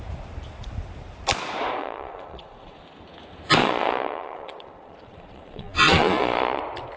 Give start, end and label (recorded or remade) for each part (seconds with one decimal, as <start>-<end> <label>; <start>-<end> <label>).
0.0-1.8 recorded; 1.8-2.8 remade; 2.8-3.6 recorded; 3.6-6.6 remade; 6.6-7.0 recorded

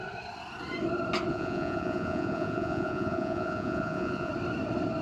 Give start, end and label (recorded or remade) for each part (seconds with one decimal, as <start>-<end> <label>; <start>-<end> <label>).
0.0-1.3 recorded; 1.3-4.3 remade; 4.3-5.0 recorded

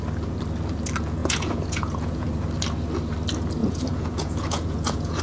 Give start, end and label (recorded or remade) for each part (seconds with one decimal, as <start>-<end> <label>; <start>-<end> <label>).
0.0-1.2 recorded; 1.2-2.3 remade; 2.3-3.6 recorded; 3.6-5.2 remade

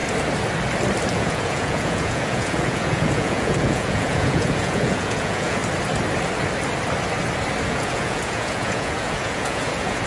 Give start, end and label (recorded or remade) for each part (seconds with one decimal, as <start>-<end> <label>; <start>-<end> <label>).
0.0-1.1 recorded; 1.1-5.6 remade; 5.6-7.7 recorded; 7.7-10.1 remade

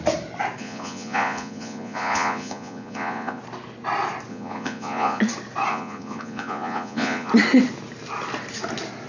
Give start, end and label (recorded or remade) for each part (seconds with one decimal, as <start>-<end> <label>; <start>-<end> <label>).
0.0-0.6 recorded; 0.6-3.4 remade; 3.4-4.3 recorded; 4.3-5.2 remade; 5.2-5.7 recorded; 5.7-7.3 remade; 7.3-9.1 recorded